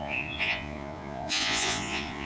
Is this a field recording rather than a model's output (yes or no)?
no